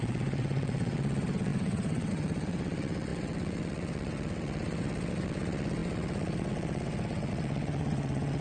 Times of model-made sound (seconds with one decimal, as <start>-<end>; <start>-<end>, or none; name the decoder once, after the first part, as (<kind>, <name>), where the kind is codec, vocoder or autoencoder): 0.0-8.4 (vocoder, WaveNeXt)